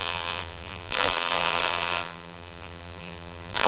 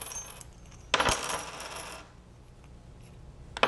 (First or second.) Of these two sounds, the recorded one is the second